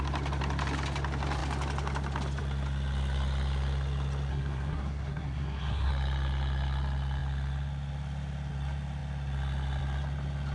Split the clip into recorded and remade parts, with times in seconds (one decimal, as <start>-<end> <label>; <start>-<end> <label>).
0.0-4.3 recorded; 4.3-5.9 remade; 5.9-10.5 recorded